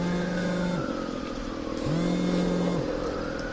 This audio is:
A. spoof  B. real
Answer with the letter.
B